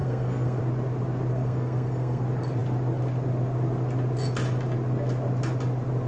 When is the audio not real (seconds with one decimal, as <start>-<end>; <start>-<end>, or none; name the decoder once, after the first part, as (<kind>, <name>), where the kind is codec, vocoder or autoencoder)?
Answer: 0.0-0.6 (codec, SNAC); 1.3-2.2